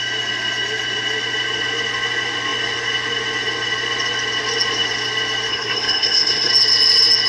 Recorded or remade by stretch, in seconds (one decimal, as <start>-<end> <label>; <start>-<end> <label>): 0.0-5.5 recorded; 5.5-6.5 remade; 6.5-7.3 recorded